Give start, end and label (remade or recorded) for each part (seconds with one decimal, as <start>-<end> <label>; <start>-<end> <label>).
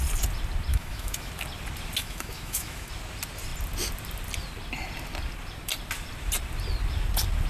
0.0-0.7 recorded; 0.7-1.3 remade; 1.3-2.0 recorded; 2.0-2.9 remade; 2.9-7.5 recorded